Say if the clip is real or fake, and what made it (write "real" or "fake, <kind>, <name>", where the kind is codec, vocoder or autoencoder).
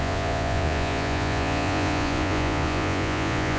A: fake, vocoder, Vocos